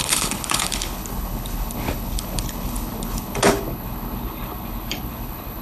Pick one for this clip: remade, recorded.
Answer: remade